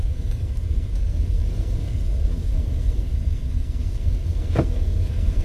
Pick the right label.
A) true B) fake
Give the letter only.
B